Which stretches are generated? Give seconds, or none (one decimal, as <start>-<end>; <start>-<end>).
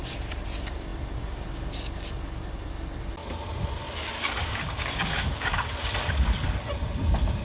4.4-5.7